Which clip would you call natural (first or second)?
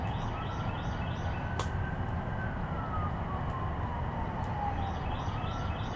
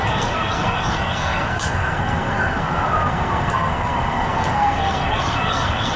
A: first